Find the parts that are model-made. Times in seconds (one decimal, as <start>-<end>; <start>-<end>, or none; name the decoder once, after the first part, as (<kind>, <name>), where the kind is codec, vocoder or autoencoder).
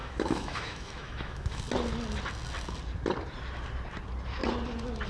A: 0.0-1.6 (autoencoder, DAC-VAE)